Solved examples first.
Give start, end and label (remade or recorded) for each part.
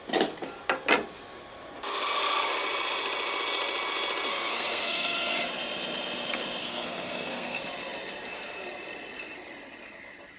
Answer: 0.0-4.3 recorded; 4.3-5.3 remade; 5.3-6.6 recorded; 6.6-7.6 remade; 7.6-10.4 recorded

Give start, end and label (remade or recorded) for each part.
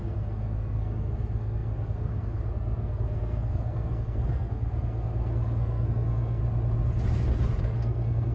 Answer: 0.0-6.4 remade; 6.4-7.6 recorded; 7.6-8.3 remade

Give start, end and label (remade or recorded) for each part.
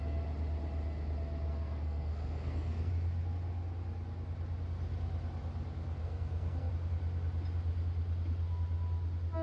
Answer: 0.0-1.5 recorded; 1.5-2.9 remade; 2.9-6.0 recorded; 6.0-6.7 remade; 6.7-9.4 recorded